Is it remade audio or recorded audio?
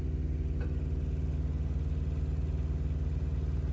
recorded